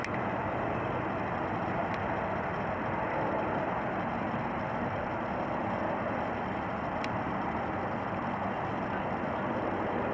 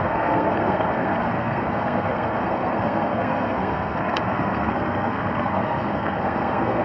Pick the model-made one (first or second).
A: second